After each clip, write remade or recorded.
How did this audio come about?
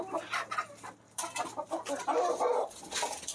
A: recorded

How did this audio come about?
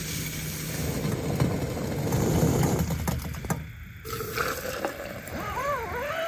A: recorded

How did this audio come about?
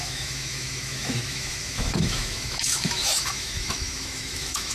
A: remade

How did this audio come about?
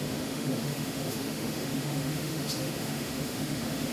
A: remade